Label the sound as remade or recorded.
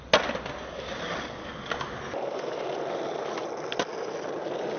recorded